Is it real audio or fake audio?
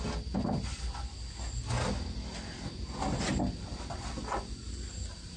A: real